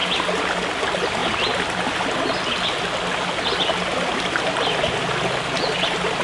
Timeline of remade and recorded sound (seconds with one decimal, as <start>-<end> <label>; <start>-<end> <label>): 0.0-6.2 recorded